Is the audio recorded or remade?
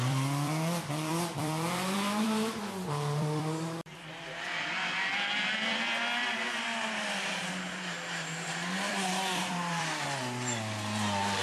remade